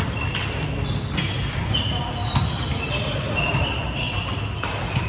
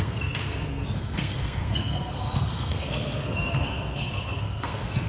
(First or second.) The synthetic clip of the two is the second